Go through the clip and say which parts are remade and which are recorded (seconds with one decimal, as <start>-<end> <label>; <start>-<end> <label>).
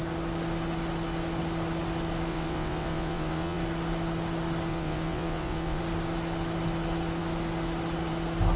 0.0-2.3 recorded; 2.3-3.6 remade; 3.6-4.7 recorded; 4.7-5.8 remade; 5.8-8.6 recorded